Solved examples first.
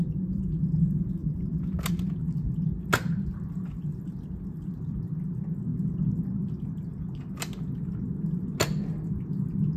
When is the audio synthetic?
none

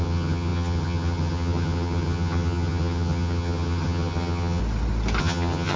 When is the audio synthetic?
0.0-4.6 (vocoder, HiFi-GAN); 5.2-5.8